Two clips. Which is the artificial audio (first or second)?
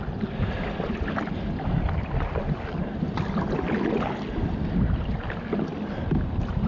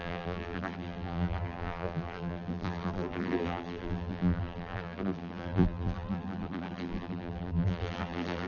second